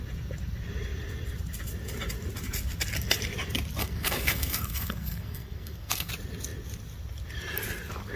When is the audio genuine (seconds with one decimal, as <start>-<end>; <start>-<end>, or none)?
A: 0.0-3.8; 6.1-8.2